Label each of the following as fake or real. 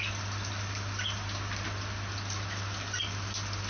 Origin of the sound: real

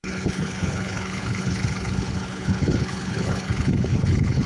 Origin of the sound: fake